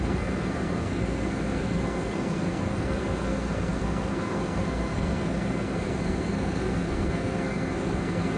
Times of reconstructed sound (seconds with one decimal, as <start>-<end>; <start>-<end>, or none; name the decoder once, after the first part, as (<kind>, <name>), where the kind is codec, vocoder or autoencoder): 0.0-8.4 (codec, SNAC)